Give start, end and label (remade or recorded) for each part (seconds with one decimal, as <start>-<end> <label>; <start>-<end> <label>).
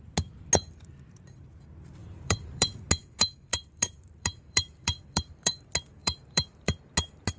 0.0-2.0 recorded; 2.0-2.8 remade; 2.8-3.5 recorded; 3.5-5.5 remade; 5.5-6.0 recorded; 6.0-6.9 remade; 6.9-7.4 recorded